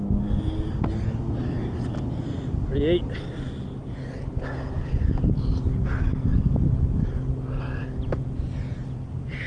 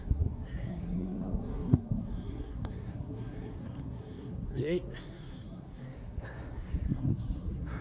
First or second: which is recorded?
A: first